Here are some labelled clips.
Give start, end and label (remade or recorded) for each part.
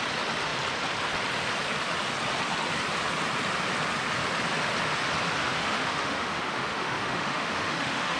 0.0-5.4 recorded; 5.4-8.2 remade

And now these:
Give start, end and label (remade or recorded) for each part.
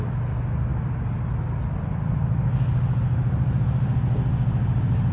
0.0-5.1 recorded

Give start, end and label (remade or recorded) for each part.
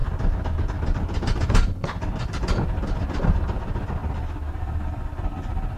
0.0-5.8 remade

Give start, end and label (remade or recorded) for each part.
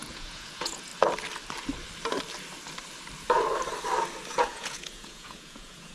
0.0-0.9 remade; 0.9-4.4 recorded; 4.4-5.9 remade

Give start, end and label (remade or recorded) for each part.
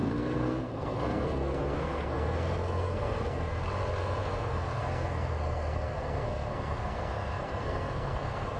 0.0-3.6 remade; 3.6-4.0 recorded; 4.0-8.6 remade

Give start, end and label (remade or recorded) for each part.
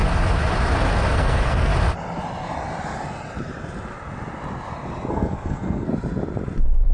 0.0-1.1 recorded; 1.1-1.7 remade; 1.7-5.1 recorded; 5.1-5.9 remade; 5.9-6.9 recorded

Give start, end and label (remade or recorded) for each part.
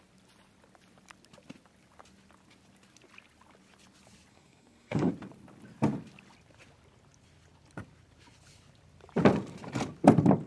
0.0-4.3 recorded; 4.3-5.1 remade; 5.1-10.5 recorded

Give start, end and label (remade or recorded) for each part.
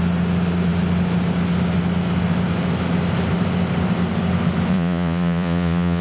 0.0-4.7 recorded; 4.7-6.0 remade